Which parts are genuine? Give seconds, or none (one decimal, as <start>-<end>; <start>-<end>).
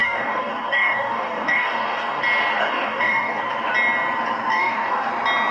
2.2-2.6; 3.4-4.5; 5.1-5.5